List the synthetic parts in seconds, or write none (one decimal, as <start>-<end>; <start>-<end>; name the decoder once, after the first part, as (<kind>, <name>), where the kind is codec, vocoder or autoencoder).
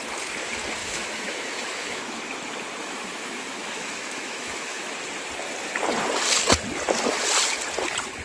0.8-2.2 (autoencoder, DAC-VAE); 2.8-4.9